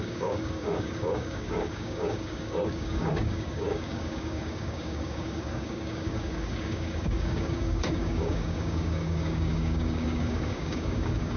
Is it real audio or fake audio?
fake